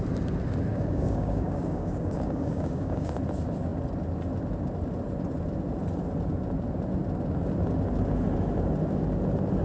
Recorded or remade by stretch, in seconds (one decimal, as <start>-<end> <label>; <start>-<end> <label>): 0.0-0.7 recorded; 0.7-3.1 remade; 3.1-9.6 recorded